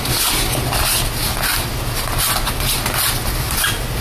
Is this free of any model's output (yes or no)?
yes